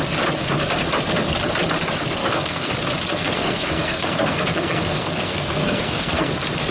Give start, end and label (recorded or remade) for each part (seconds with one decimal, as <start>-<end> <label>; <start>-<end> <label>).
0.0-2.2 recorded; 2.2-2.7 remade; 2.7-3.1 recorded; 3.1-6.3 remade; 6.3-6.7 recorded